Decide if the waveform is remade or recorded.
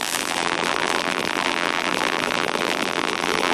remade